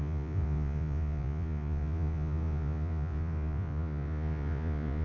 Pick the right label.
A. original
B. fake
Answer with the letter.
B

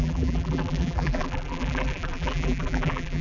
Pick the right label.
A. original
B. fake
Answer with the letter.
B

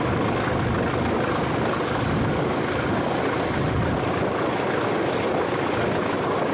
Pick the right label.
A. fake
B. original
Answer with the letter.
B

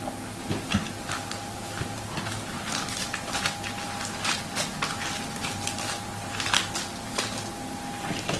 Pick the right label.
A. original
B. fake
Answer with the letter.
A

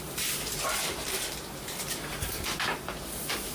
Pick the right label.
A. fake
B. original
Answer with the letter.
A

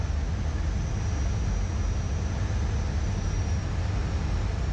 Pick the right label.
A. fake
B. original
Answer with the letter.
B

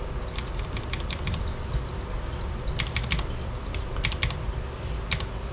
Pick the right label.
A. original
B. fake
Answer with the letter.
A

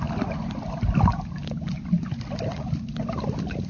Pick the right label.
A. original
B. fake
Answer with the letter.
A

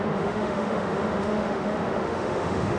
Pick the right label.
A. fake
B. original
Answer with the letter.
A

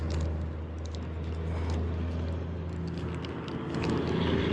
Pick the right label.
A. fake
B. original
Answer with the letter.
B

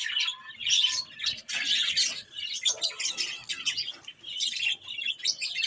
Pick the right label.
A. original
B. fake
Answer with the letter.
A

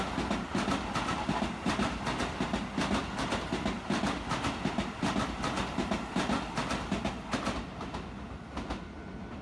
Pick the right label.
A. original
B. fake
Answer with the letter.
A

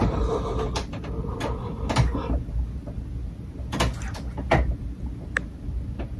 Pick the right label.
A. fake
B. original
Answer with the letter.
B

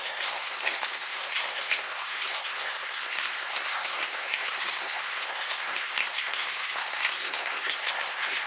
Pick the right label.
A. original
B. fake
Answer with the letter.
B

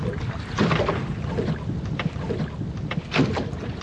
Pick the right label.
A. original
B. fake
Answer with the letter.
A